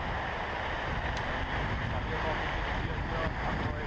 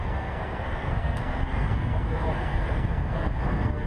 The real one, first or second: first